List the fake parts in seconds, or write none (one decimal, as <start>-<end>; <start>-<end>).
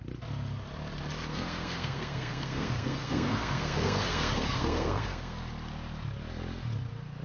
1.3-5.4